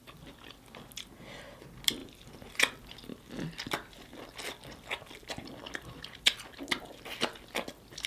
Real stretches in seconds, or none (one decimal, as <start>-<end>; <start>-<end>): 0.0-8.1